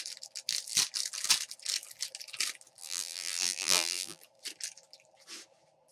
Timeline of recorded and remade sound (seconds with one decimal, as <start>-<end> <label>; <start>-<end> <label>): 0.0-2.8 recorded; 2.8-4.2 remade; 4.2-5.9 recorded